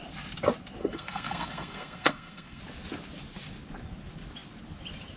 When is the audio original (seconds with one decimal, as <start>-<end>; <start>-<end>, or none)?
0.0-0.8; 2.6-5.2